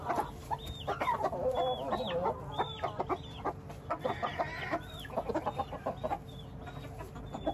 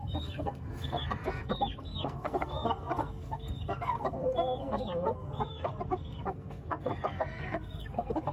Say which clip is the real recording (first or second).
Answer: first